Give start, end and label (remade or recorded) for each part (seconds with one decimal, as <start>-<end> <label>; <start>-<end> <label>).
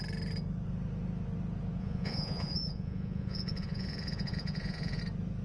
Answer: 0.0-1.8 recorded; 1.8-5.0 remade; 5.0-5.4 recorded